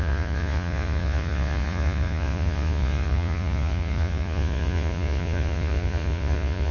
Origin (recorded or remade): remade